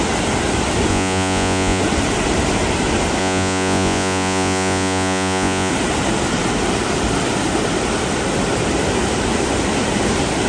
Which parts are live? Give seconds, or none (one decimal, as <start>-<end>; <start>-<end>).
0.0-0.9; 1.8-3.2; 5.7-10.5